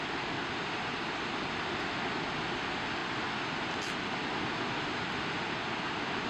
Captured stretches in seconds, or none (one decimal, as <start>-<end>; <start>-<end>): 0.0-6.3